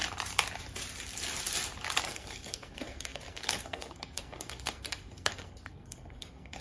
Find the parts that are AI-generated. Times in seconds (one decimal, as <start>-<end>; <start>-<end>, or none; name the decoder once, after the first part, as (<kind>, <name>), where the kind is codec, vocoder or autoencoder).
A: 2.0-6.6 (codec, SNAC)